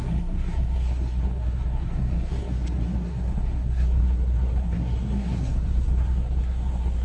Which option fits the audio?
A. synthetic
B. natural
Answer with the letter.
A